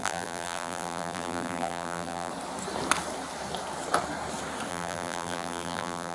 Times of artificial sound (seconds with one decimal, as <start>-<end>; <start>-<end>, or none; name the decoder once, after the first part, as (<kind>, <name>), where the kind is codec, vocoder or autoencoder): 0.0-2.3 (vocoder, BigVGAN v2); 4.7-6.1